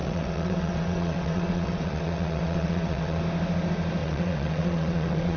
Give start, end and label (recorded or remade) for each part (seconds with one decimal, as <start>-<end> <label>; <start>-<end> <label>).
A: 0.0-3.2 remade; 3.2-4.0 recorded; 4.0-5.4 remade